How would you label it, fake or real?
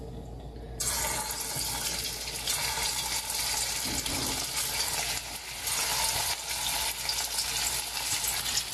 real